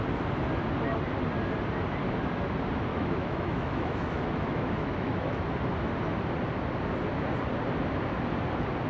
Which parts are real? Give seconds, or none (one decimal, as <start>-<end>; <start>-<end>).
0.0-2.9; 5.4-8.9